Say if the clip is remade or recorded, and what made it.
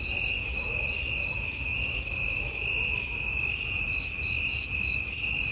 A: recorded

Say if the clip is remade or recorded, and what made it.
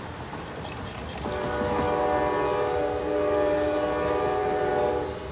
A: recorded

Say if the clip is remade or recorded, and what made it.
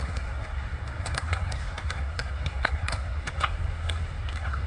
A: remade, codec, SNAC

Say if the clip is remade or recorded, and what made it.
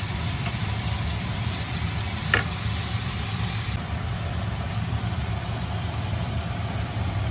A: remade, vocoder, BigVGAN v2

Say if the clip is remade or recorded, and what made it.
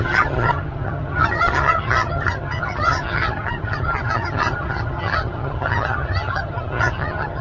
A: remade, vocoder, HiFi-GAN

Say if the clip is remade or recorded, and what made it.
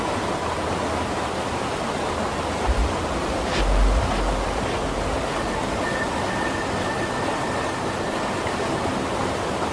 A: recorded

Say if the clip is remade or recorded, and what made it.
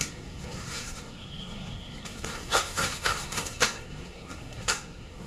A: remade, codec, SNAC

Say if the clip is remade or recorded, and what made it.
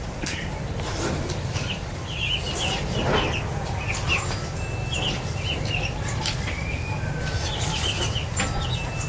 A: recorded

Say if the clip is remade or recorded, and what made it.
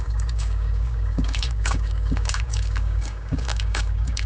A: remade, codec, DAC